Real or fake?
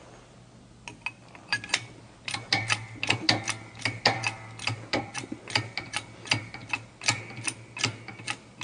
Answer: real